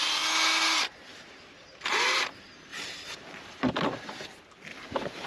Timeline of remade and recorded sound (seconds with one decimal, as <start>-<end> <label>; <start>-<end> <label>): 0.0-2.7 recorded; 2.7-3.7 remade; 3.7-4.7 recorded; 4.7-5.3 remade